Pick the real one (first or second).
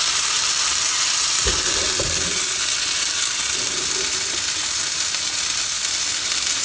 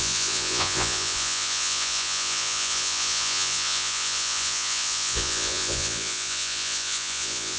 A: first